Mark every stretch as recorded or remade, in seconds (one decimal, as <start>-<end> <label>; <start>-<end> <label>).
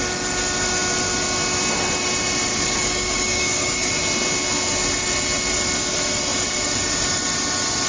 0.0-2.5 recorded; 2.5-3.9 remade; 3.9-7.9 recorded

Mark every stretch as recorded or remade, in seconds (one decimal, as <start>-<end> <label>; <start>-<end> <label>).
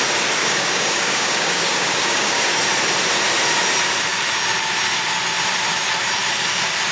0.0-0.4 recorded; 0.4-2.6 remade; 2.6-6.9 recorded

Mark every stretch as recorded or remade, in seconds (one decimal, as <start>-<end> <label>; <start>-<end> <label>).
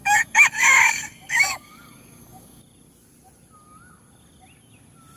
0.0-2.6 remade; 2.6-5.2 recorded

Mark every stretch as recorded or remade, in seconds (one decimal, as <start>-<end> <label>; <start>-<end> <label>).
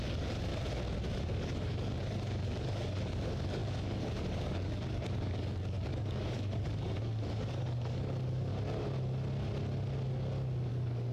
0.0-0.5 remade; 0.5-1.2 recorded; 1.2-8.5 remade; 8.5-10.7 recorded; 10.7-11.1 remade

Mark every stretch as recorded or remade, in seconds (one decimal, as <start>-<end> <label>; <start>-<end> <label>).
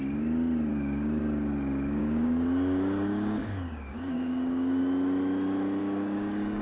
0.0-0.7 recorded; 0.7-1.2 remade; 1.2-2.0 recorded; 2.0-4.8 remade; 4.8-5.8 recorded; 5.8-6.6 remade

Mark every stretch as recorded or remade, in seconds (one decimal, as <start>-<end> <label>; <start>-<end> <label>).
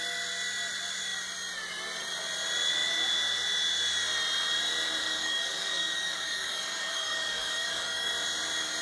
0.0-5.0 recorded; 5.0-8.1 remade; 8.1-8.8 recorded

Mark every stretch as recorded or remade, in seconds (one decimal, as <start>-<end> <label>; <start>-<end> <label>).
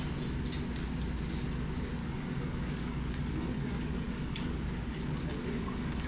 0.0-2.0 recorded; 2.0-6.1 remade